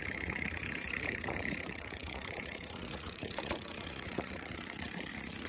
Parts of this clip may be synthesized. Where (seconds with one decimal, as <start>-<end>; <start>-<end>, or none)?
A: 0.0-5.5